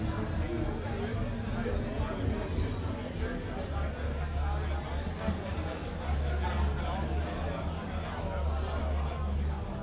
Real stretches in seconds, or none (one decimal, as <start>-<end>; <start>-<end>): 0.0-9.8